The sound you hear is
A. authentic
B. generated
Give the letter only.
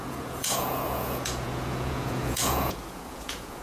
B